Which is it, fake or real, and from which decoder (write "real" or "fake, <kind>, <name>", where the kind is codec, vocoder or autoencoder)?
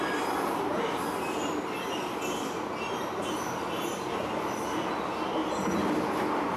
real